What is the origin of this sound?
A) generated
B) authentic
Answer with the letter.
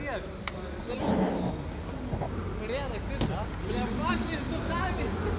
B